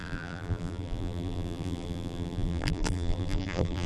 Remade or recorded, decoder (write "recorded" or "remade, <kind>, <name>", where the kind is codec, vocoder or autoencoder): remade, vocoder, BigVGAN v2